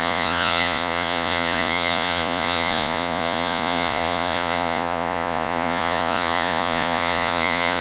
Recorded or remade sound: remade